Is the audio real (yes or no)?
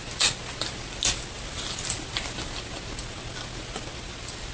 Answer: yes